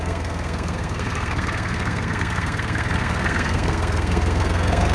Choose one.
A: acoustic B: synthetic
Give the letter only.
B